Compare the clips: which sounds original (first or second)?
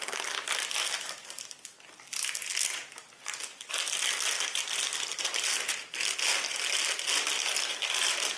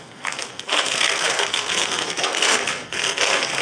first